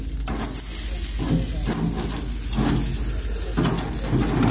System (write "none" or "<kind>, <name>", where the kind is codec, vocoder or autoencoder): none